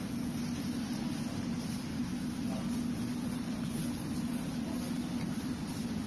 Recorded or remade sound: recorded